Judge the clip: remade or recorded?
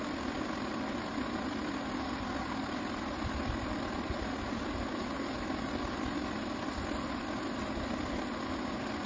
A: recorded